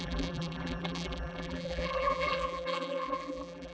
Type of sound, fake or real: fake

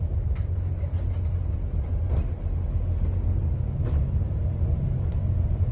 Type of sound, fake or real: real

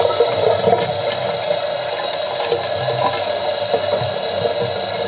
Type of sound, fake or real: real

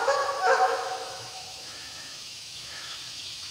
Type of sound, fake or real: fake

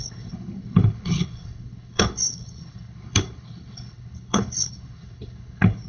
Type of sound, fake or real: fake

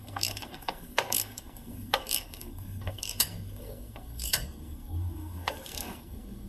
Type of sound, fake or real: fake